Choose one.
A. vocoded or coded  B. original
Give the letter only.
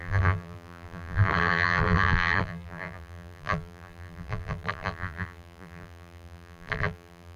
A